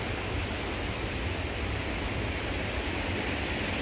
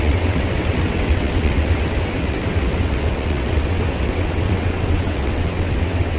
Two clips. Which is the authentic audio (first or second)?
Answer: first